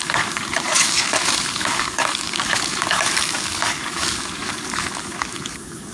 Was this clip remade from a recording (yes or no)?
yes